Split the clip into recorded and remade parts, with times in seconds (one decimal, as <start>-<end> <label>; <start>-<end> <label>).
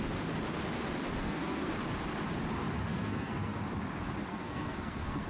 0.0-1.2 recorded; 1.2-1.7 remade; 1.7-2.9 recorded; 2.9-3.6 remade; 3.6-4.3 recorded; 4.3-5.3 remade